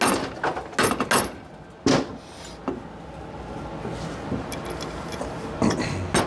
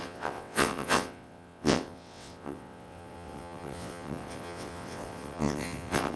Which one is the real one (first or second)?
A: first